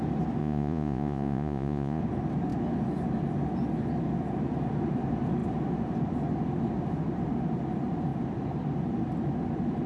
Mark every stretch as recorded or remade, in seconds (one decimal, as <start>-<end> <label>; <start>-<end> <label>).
0.0-0.4 recorded; 0.4-2.0 remade; 2.0-9.9 recorded